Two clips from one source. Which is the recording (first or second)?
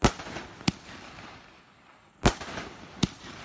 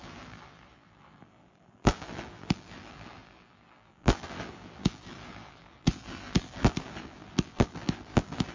first